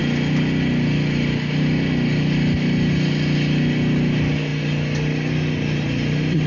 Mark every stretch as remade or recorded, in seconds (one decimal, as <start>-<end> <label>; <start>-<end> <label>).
0.0-6.5 recorded